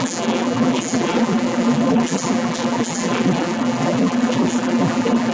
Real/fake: fake